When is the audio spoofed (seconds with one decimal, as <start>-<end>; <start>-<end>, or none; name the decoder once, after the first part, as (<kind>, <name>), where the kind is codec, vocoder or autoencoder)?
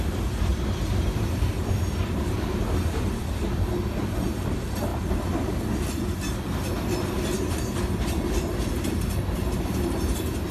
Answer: 0.5-3.7 (vocoder, BigVGAN v2)